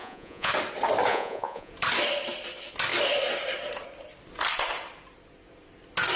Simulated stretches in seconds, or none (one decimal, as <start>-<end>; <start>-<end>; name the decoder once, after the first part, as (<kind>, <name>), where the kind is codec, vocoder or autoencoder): 0.0-0.5 (vocoder, Vocos); 1.1-1.7